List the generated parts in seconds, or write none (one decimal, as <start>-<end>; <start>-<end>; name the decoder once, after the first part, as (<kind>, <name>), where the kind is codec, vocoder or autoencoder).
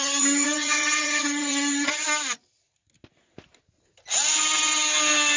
0.0-2.0 (vocoder, HiFi-GAN)